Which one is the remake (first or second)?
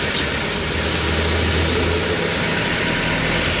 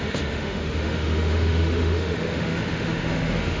second